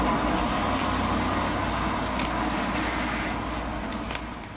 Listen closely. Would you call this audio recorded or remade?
recorded